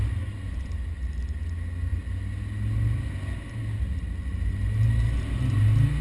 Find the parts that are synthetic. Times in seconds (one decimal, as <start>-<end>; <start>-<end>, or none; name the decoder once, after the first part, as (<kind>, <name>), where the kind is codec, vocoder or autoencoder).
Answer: none